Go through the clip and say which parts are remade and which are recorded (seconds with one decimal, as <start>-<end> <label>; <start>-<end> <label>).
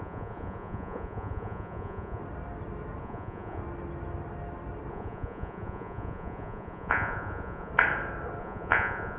0.0-2.2 remade; 2.2-3.0 recorded; 3.0-3.6 remade; 3.6-4.9 recorded; 4.9-7.7 remade; 7.7-8.4 recorded; 8.4-9.2 remade